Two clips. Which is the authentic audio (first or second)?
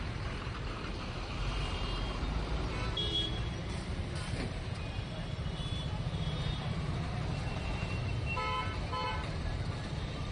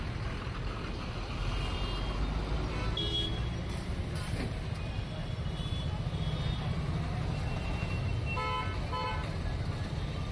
second